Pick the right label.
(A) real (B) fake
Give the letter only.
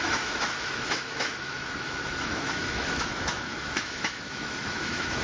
B